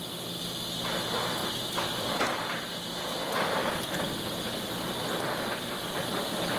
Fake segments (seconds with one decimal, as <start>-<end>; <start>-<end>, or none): 1.4-2.3; 3.6-5.9